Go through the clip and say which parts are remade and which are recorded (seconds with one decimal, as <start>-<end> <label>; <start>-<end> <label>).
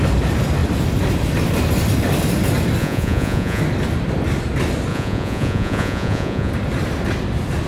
0.0-2.8 recorded; 2.8-3.6 remade; 3.6-4.9 recorded; 4.9-6.5 remade; 6.5-7.7 recorded